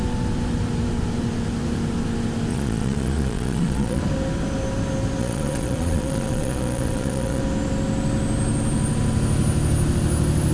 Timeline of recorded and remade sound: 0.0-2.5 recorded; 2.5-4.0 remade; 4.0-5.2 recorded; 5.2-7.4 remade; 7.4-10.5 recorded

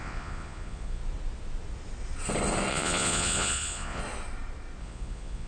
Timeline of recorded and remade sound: 0.0-1.0 remade; 1.0-2.7 recorded; 2.7-4.0 remade; 4.0-4.8 recorded; 4.8-5.5 remade

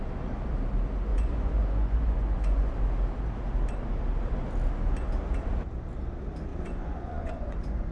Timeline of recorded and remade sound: 0.0-1.1 recorded; 1.1-2.7 remade; 2.7-6.5 recorded; 6.5-7.9 remade

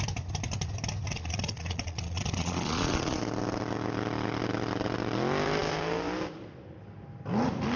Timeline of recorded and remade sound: 0.0-1.1 recorded; 1.1-3.2 remade; 3.2-7.8 recorded